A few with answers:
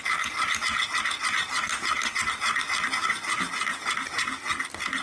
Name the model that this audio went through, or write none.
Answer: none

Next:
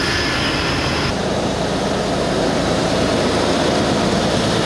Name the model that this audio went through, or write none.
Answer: vocoder, BigVGAN v2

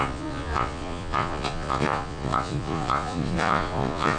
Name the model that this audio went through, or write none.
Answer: vocoder, Vocos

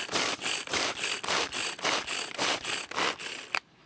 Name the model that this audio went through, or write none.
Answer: none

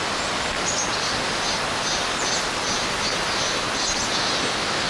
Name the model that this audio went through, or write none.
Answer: none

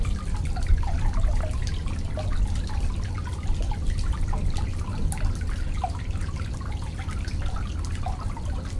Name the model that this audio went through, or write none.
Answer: none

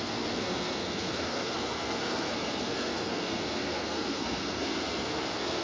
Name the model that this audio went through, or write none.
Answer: codec, SNAC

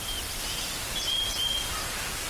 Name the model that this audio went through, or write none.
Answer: none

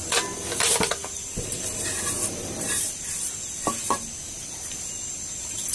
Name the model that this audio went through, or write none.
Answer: none